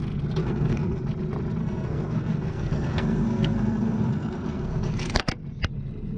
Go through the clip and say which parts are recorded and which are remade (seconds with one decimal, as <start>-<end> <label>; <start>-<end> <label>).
0.0-0.4 recorded; 0.4-1.0 remade; 1.0-1.6 recorded; 1.6-5.3 remade; 5.3-6.2 recorded